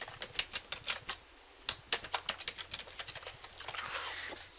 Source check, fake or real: real